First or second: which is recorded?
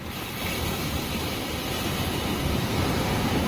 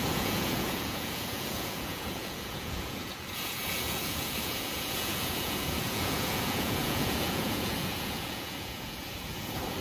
first